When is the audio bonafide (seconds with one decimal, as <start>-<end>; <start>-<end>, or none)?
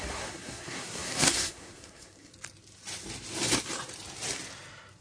2.3-5.0